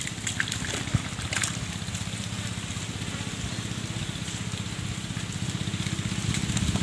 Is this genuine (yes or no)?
yes